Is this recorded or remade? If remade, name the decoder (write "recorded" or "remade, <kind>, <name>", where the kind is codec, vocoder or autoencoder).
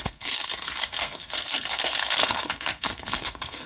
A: remade, codec, SNAC